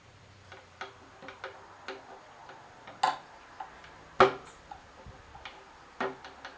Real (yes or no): yes